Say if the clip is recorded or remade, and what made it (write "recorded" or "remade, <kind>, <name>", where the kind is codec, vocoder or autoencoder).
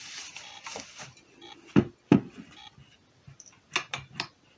recorded